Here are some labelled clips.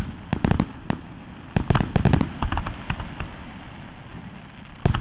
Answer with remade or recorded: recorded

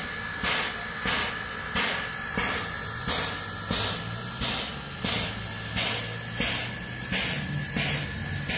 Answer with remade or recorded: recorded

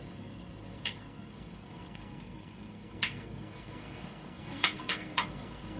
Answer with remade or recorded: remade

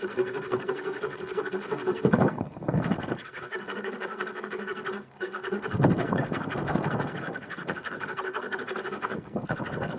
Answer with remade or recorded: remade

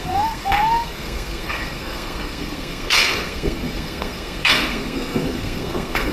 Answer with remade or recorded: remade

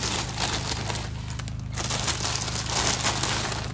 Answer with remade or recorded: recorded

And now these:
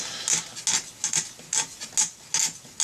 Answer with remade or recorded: recorded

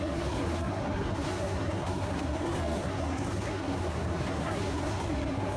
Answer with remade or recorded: remade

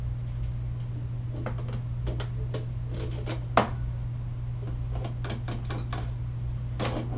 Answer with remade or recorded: recorded